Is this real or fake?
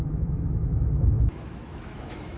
fake